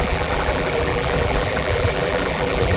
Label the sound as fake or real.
fake